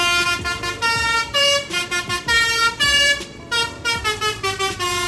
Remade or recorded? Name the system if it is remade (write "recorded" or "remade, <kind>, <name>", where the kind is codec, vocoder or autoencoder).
remade, vocoder, BigVGAN v2